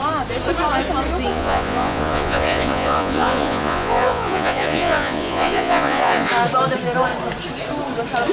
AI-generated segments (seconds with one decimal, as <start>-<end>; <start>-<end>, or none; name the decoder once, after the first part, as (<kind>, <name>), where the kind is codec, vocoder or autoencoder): 1.3-6.3 (vocoder, Vocos)